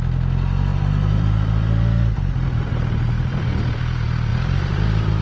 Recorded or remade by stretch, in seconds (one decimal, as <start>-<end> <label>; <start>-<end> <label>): 0.0-0.7 recorded; 0.7-3.8 remade; 3.8-4.3 recorded; 4.3-5.2 remade